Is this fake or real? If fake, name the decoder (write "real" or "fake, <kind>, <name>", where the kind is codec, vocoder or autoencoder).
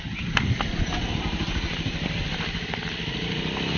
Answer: real